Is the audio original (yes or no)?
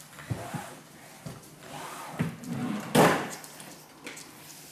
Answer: yes